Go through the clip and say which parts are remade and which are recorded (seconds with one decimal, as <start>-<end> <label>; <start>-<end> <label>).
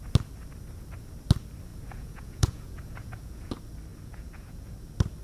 0.0-1.7 recorded; 1.7-3.5 remade; 3.5-3.9 recorded; 3.9-4.6 remade; 4.6-5.2 recorded